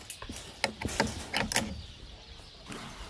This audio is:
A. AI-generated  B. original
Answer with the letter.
B